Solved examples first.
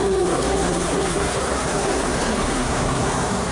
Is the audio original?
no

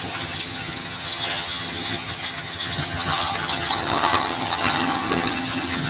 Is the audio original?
no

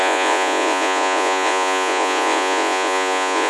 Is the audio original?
no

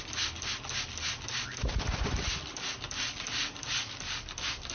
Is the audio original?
yes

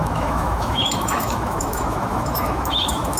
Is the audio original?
no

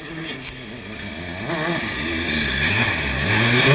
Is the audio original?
yes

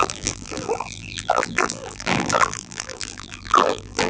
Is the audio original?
no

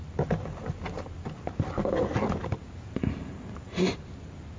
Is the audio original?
yes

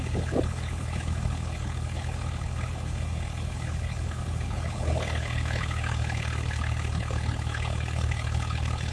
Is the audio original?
no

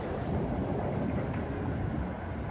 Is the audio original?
yes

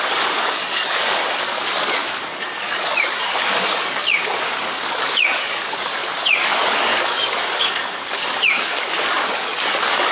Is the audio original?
no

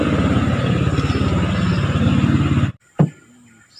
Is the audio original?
yes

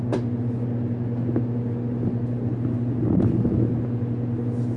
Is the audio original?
yes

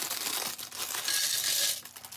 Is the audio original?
yes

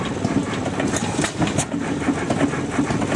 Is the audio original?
no